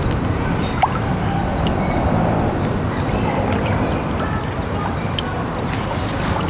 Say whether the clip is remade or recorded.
recorded